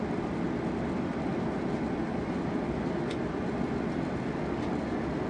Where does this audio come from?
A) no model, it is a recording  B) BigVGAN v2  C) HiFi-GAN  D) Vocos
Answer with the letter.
A